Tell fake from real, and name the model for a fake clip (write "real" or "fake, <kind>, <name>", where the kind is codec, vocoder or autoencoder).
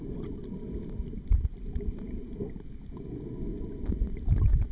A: real